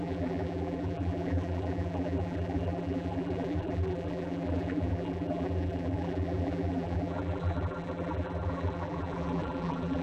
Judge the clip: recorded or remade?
remade